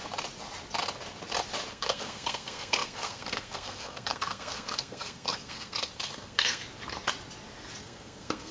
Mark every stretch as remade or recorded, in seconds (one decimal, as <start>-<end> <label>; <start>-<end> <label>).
0.0-1.7 recorded; 1.7-6.6 remade; 6.6-7.8 recorded; 7.8-8.5 remade

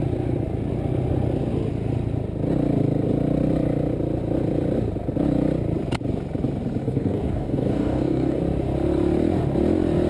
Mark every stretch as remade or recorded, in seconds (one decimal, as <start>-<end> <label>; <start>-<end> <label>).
0.0-6.8 recorded; 6.8-8.4 remade; 8.4-10.1 recorded

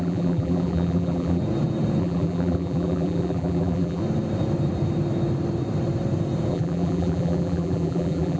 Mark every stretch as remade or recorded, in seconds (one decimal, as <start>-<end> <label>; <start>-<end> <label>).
0.0-1.4 remade; 1.4-2.0 recorded; 2.0-4.0 remade; 4.0-6.5 recorded; 6.5-8.4 remade